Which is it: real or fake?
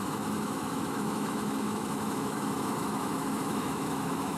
fake